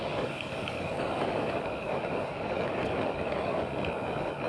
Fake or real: fake